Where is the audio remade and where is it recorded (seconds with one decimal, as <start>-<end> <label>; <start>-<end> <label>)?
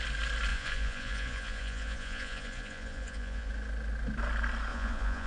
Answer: 0.0-0.5 recorded; 0.5-3.5 remade; 3.5-4.7 recorded; 4.7-5.3 remade